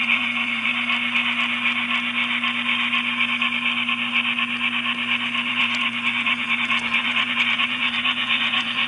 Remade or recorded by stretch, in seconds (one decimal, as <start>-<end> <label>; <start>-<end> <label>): 0.0-0.7 remade; 0.7-5.5 recorded; 5.5-8.9 remade